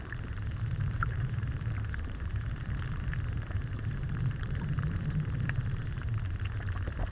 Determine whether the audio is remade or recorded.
remade